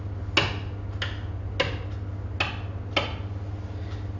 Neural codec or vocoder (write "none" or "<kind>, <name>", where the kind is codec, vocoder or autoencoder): none